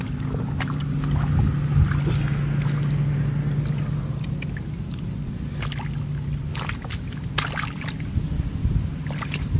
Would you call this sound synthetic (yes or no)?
no